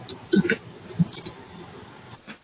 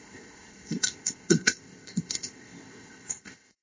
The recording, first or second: first